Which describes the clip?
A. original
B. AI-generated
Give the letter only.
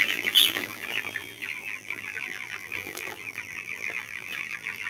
B